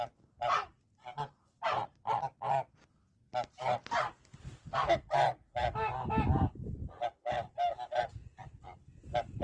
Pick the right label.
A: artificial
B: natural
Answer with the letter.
B